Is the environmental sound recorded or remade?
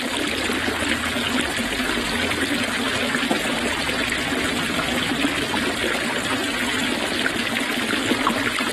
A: recorded